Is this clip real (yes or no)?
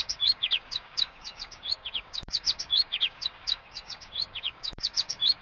no